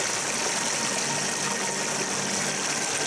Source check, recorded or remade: recorded